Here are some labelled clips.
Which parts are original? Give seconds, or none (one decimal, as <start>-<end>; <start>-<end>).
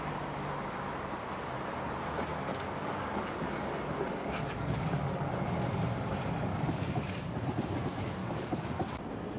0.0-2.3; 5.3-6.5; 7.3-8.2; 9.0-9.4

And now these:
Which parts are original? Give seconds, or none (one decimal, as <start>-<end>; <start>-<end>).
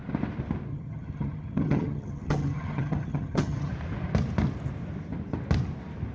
0.0-0.7; 3.7-6.1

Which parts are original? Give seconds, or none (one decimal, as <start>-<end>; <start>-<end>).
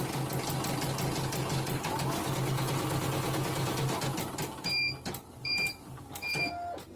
0.0-5.4; 6.5-7.0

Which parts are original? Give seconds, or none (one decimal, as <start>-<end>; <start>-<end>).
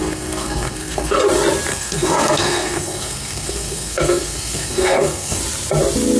1.2-1.7; 5.4-6.2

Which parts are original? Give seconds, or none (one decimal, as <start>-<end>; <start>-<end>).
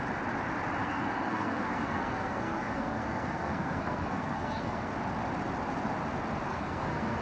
0.0-0.8; 4.9-6.5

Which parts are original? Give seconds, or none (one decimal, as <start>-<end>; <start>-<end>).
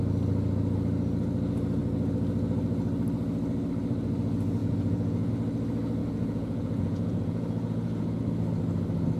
0.0-4.6; 5.3-6.0; 8.2-9.2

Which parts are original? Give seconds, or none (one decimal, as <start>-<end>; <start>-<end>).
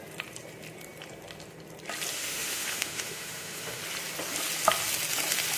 0.0-2.1; 3.8-5.6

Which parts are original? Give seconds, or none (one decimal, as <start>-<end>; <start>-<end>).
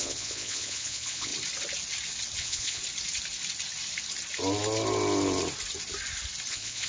1.3-2.4; 2.8-6.5